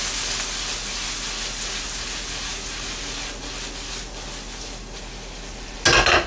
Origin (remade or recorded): recorded